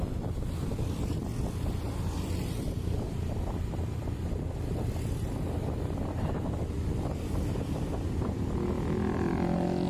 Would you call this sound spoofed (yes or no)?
no